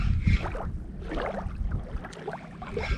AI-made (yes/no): no